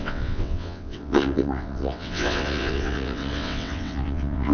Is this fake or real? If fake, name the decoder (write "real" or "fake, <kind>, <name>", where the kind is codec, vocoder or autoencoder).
fake, vocoder, WaveNeXt